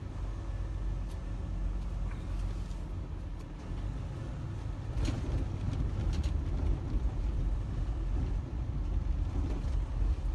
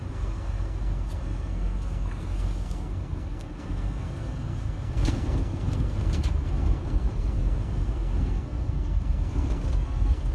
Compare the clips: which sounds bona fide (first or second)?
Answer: first